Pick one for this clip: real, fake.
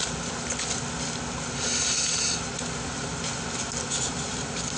real